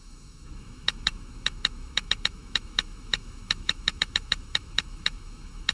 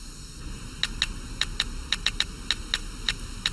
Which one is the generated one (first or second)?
first